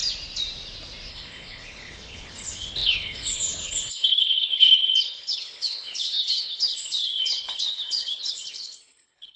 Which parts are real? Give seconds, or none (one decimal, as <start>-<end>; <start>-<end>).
0.0-1.1